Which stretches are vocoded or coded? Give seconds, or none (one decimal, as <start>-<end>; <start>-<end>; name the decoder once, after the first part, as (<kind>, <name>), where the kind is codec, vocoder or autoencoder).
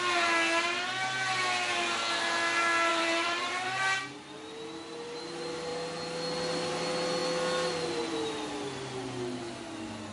2.9-5.2 (vocoder, BigVGAN v2)